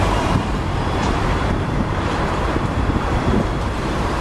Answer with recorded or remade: remade